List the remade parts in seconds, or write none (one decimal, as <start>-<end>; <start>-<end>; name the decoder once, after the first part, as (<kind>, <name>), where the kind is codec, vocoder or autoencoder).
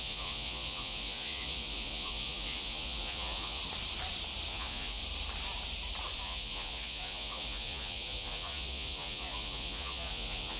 0.0-3.6 (vocoder, Vocos); 4.5-5.0; 6.2-10.6